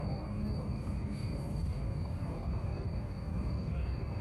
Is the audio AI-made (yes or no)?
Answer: yes